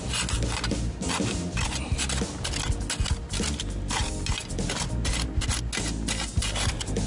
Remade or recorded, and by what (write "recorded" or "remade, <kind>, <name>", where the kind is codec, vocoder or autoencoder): recorded